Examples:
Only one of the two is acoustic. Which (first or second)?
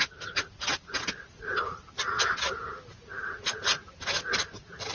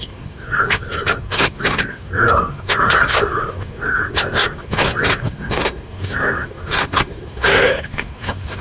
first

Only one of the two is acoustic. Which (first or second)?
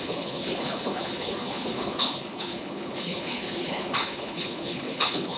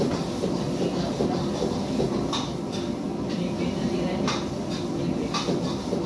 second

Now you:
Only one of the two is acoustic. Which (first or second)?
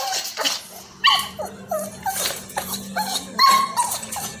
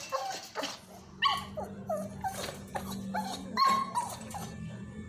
second